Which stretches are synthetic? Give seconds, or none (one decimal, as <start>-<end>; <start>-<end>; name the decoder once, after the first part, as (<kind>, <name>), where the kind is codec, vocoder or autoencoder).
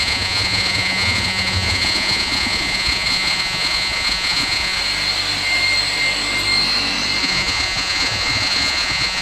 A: 0.0-4.8 (vocoder, Vocos); 7.2-9.2